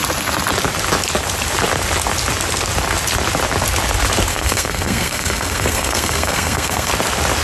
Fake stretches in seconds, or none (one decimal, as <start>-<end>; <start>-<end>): 4.3-6.9